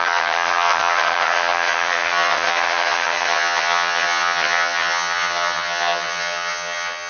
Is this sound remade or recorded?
remade